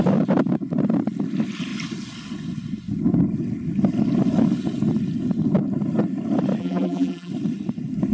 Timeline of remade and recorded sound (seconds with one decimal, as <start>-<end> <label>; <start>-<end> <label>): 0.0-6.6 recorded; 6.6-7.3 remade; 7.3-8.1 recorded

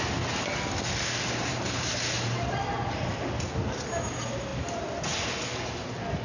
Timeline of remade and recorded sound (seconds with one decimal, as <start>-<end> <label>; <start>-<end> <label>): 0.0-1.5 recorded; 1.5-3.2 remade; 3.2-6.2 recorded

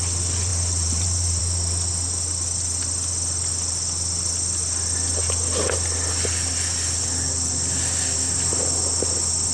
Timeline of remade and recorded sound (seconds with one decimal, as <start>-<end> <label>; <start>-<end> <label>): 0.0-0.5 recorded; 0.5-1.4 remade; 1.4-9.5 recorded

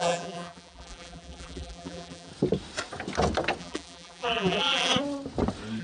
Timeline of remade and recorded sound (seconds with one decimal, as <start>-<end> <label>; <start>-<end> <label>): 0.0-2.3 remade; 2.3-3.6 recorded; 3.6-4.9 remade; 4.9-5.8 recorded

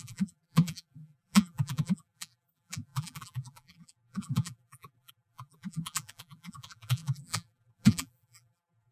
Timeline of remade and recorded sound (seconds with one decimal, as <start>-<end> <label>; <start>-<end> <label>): 0.0-8.9 remade

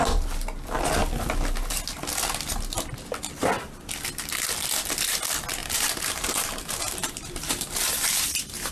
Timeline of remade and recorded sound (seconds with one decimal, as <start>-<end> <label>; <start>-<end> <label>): 0.0-5.6 recorded; 5.6-8.7 remade

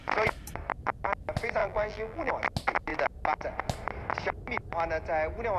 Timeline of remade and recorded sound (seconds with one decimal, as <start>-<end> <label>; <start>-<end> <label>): 0.0-1.6 recorded; 1.6-2.3 remade; 2.3-5.6 recorded